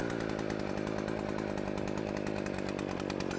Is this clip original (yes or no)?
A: yes